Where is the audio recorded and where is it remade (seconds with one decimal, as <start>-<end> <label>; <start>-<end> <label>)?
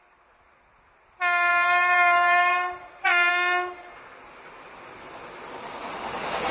0.0-1.5 recorded; 1.5-3.3 remade; 3.3-6.5 recorded